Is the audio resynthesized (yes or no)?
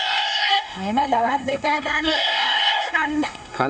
yes